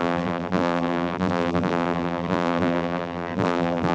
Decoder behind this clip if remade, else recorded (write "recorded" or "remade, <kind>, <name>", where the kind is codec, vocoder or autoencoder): remade, vocoder, BigVGAN v2